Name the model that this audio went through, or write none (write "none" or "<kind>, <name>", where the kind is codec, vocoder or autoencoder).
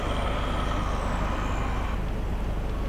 none